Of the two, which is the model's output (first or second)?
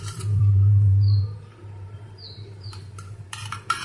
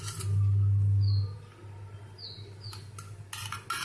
first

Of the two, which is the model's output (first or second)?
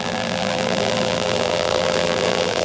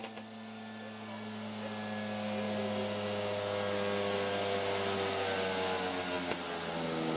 first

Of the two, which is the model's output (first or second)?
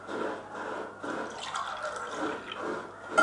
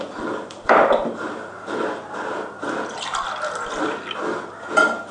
second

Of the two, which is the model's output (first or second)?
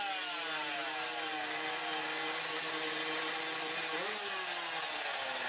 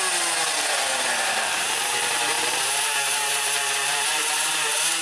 second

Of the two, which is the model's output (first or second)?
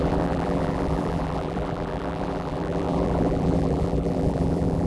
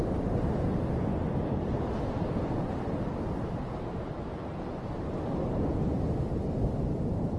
first